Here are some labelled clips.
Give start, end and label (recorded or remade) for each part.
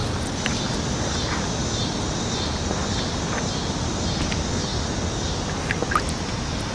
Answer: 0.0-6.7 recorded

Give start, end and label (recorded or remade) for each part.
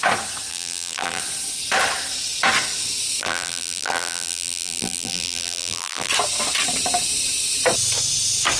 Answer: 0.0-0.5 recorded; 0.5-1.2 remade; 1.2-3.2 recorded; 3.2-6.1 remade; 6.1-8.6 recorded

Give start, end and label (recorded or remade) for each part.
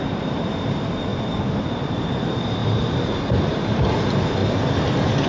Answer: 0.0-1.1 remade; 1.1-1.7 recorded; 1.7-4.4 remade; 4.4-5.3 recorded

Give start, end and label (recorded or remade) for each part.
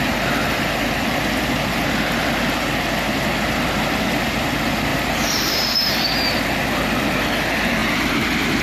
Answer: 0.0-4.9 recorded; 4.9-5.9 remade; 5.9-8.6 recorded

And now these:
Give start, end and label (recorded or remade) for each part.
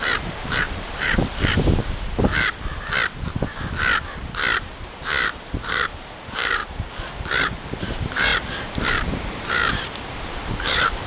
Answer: 0.0-1.3 remade; 1.3-5.7 recorded; 5.7-6.6 remade; 6.6-7.8 recorded; 7.8-8.3 remade; 8.3-9.1 recorded; 9.1-11.1 remade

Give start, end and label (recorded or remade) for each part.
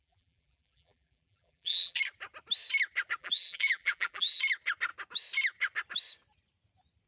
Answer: 0.0-2.0 remade; 2.0-3.2 recorded; 3.2-4.4 remade; 4.4-7.1 recorded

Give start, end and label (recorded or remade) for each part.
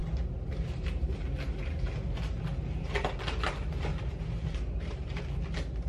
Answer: 0.0-3.5 remade; 3.5-3.9 recorded; 3.9-5.2 remade; 5.2-5.9 recorded